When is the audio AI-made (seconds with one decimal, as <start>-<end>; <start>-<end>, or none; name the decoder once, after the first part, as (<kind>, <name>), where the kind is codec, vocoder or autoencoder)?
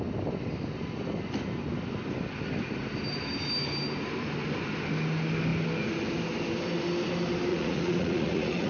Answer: 7.5-8.7 (vocoder, Vocos)